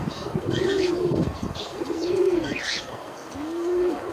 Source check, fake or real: fake